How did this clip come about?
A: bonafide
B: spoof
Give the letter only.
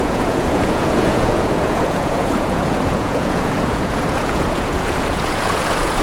B